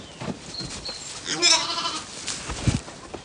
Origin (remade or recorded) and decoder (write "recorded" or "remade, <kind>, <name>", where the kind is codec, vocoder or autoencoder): recorded